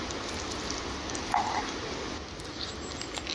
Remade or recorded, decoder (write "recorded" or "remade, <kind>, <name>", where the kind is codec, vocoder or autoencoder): recorded